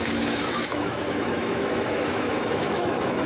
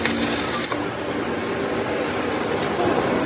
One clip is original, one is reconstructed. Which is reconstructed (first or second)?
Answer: first